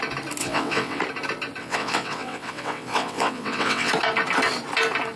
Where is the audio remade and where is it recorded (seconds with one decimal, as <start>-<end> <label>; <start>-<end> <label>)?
0.0-0.4 recorded; 0.4-1.0 remade; 1.0-1.6 recorded; 1.6-3.9 remade; 3.9-5.2 recorded